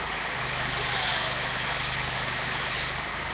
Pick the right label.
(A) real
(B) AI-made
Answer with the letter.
A